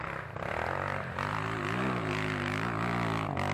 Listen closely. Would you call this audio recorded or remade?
recorded